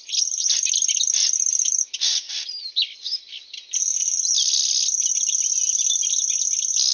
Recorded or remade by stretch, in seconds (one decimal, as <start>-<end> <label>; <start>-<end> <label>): 0.0-6.9 recorded